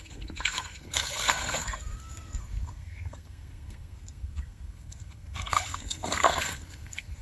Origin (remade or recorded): remade